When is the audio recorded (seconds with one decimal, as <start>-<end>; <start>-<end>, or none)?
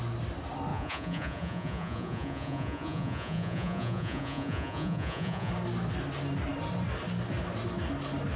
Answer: 0.0-0.7; 5.5-8.4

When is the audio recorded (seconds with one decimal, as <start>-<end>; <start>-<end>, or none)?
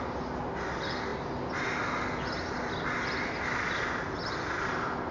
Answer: 0.0-5.1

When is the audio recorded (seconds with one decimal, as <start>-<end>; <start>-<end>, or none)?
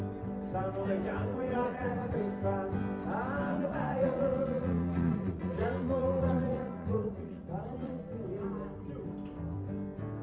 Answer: 0.0-1.3; 2.2-3.5; 8.0-10.2